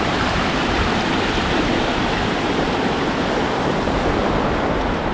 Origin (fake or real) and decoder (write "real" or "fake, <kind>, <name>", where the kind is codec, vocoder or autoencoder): fake, vocoder, BigVGAN v2